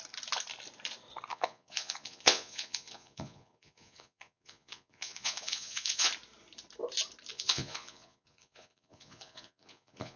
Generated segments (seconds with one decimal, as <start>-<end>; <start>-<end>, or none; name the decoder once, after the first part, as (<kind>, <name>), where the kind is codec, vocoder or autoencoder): 1.3-6.1 (vocoder, Vocos); 7.3-10.2